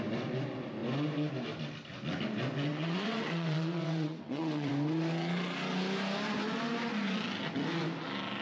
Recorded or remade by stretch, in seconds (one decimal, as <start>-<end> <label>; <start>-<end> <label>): 0.0-2.7 recorded; 2.7-4.7 remade; 4.7-8.4 recorded